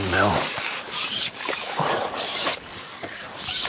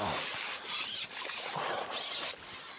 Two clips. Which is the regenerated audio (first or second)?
first